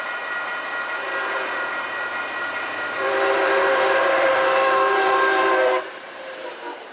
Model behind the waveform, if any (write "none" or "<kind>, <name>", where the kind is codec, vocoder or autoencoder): vocoder, BigVGAN v2